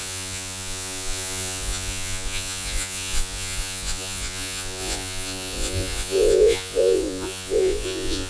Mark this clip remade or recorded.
remade